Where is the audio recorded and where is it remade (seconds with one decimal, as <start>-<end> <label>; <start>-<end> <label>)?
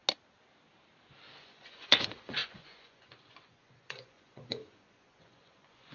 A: 0.0-1.4 recorded; 1.4-5.9 remade